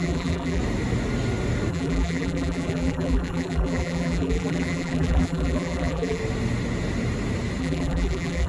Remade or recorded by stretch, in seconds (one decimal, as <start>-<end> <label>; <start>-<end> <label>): 0.0-0.6 remade; 0.6-1.7 recorded; 1.7-6.2 remade; 6.2-7.6 recorded; 7.6-8.5 remade